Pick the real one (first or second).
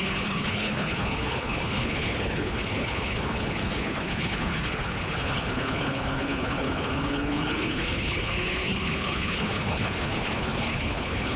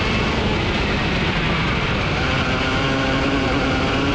second